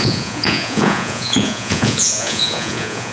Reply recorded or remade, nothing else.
remade